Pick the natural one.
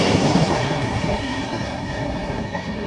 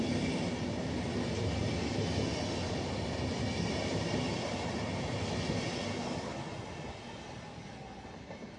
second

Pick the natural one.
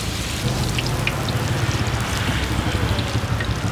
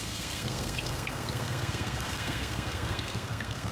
first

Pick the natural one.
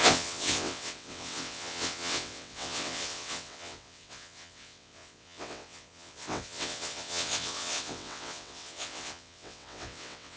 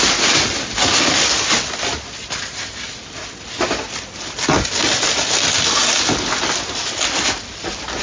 second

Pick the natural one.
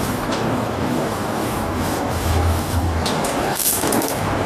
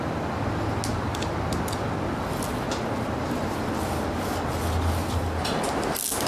second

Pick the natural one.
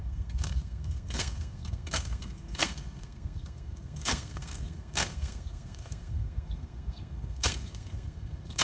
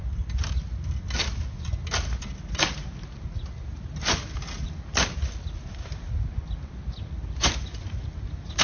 second